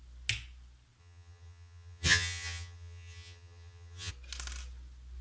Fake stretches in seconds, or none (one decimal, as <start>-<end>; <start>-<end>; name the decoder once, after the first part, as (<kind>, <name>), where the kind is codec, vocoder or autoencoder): 1.0-4.1 (vocoder, HiFi-GAN)